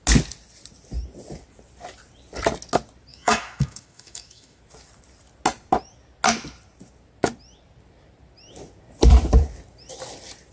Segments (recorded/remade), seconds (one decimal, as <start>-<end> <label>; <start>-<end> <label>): 0.0-3.1 recorded; 3.1-4.6 remade; 4.6-10.5 recorded